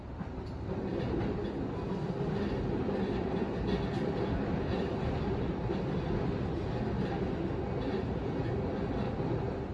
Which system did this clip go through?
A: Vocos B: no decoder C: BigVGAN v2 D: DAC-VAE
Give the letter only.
B